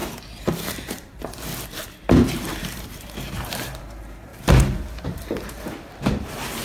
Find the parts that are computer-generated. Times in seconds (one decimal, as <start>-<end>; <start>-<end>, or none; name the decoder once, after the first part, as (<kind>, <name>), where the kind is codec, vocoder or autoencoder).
0.7-1.5 (vocoder, BigVGAN v2); 2.6-6.6